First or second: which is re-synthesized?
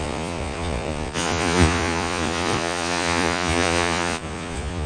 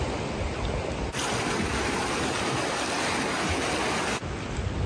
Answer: first